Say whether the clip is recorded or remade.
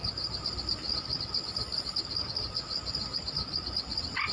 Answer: recorded